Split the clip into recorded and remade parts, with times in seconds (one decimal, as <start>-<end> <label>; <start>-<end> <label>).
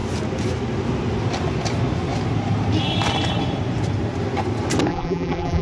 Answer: 0.0-4.9 recorded; 4.9-5.6 remade